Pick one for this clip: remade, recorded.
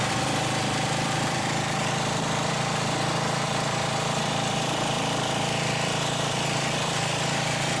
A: remade